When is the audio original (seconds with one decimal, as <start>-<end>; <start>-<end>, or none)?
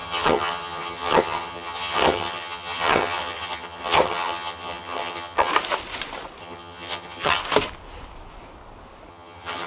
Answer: 5.5-6.4; 7.4-9.1